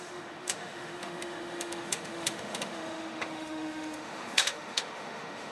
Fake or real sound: fake